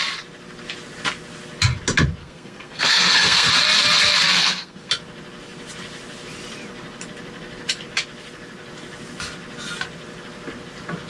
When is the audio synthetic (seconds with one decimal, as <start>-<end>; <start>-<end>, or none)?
2.2-3.5; 4.3-4.9